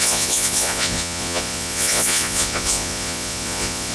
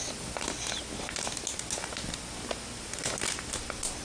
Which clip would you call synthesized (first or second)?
first